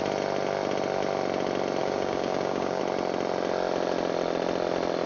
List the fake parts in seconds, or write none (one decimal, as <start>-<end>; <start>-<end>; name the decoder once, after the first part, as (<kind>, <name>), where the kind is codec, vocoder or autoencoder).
1.8-2.8 (codec, DAC)